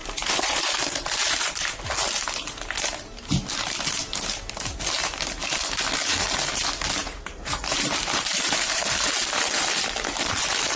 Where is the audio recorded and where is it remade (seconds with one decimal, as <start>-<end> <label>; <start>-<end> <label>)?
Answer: 0.0-1.8 remade; 1.8-7.0 recorded; 7.0-9.1 remade; 9.1-10.8 recorded